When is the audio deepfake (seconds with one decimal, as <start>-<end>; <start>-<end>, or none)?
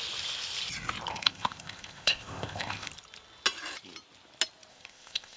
1.1-2.9; 4.7-5.4